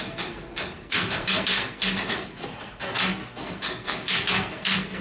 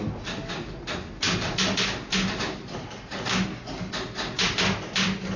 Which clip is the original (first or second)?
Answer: second